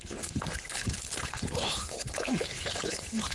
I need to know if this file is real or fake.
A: fake